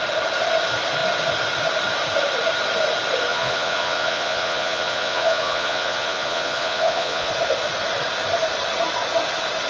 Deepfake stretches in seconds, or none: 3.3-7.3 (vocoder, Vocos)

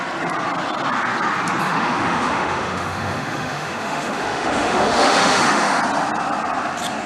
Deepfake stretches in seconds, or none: 1.6-5.8 (autoencoder, DAC-VAE)

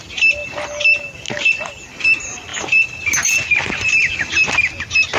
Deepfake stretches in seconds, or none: none

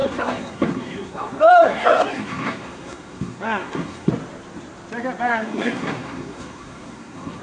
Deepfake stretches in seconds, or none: 0.0-4.1 (codec, SNAC); 5.3-7.4

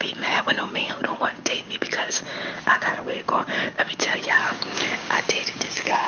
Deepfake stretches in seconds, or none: 0.0-6.1 (codec, DAC)

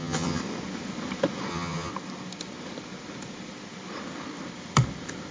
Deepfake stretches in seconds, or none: 0.0-0.4 (vocoder, HiFi-GAN); 1.5-1.9

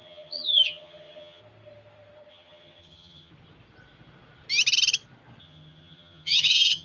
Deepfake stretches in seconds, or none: 0.0-1.4 (vocoder, HiFi-GAN); 2.3-3.3; 5.4-6.8